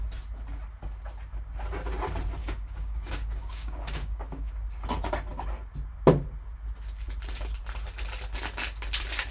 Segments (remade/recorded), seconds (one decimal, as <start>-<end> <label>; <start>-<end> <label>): 0.0-2.4 recorded; 2.4-4.5 remade; 4.5-9.3 recorded

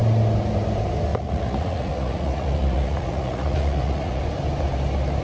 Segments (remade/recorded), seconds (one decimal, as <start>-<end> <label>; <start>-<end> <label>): 0.0-1.1 recorded; 1.1-4.2 remade; 4.2-5.2 recorded

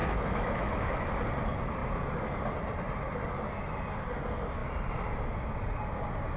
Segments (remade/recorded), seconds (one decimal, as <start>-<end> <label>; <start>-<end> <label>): 0.0-1.1 remade; 1.1-6.4 recorded

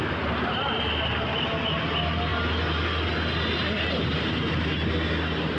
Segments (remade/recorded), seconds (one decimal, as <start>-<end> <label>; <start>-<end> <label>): 0.0-5.6 recorded

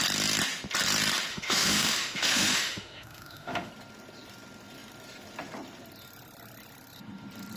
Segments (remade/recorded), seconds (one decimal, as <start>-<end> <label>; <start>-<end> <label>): 0.0-1.3 recorded; 1.3-3.7 remade; 3.7-7.6 recorded